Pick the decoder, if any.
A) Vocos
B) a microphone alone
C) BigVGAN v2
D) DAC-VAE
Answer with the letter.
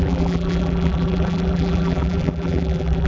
C